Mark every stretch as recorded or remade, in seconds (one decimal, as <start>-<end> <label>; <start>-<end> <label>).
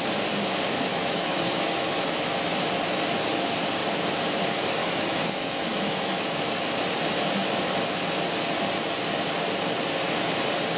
0.0-0.9 recorded; 0.9-2.6 remade; 2.6-4.8 recorded; 4.8-6.4 remade; 6.4-10.8 recorded